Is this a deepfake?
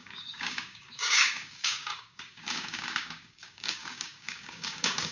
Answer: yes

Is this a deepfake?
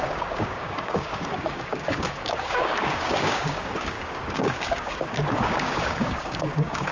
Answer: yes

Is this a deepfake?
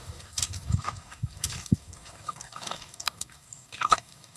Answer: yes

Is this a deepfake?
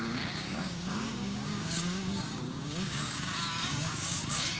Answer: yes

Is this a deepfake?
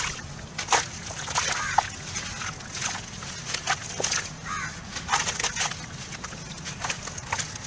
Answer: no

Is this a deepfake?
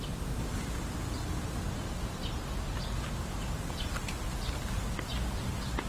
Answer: no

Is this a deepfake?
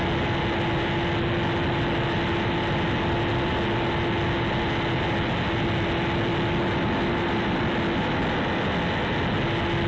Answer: no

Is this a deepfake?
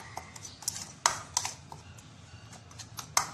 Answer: no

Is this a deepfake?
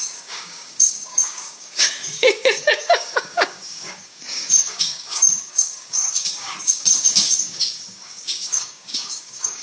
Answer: yes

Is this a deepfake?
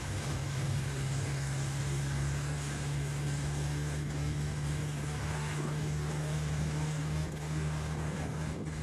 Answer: yes